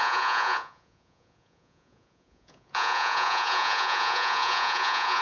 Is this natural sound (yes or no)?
no